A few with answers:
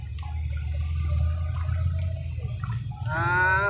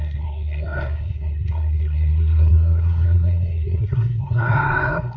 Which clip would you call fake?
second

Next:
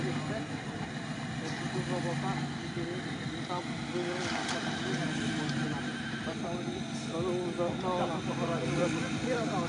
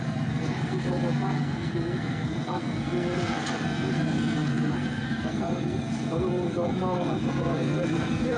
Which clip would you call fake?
second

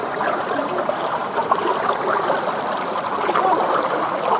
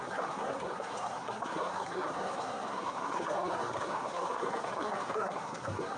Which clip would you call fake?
second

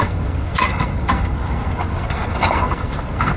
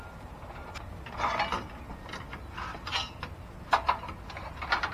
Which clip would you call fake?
first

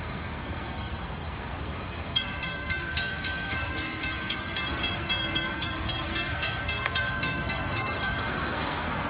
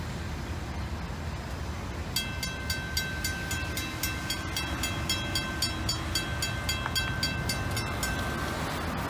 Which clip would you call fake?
first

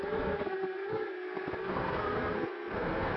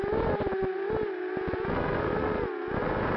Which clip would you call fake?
first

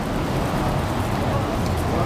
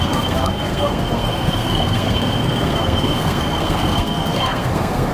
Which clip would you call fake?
second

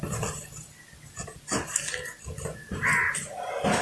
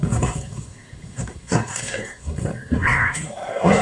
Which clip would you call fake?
second